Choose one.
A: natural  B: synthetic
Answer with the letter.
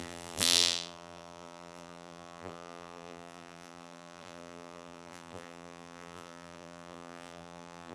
B